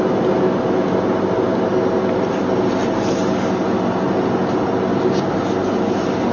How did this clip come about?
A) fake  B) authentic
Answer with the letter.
B